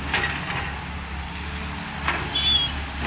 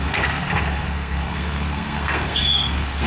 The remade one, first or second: second